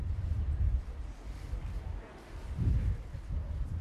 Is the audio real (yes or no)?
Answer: yes